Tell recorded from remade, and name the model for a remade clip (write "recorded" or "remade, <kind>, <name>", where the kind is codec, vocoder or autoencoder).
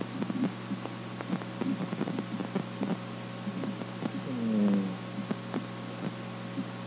recorded